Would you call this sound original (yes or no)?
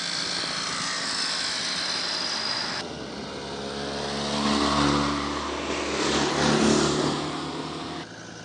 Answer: yes